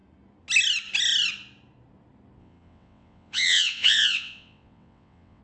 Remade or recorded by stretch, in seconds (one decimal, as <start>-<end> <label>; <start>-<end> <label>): 0.0-2.4 recorded; 2.4-5.4 remade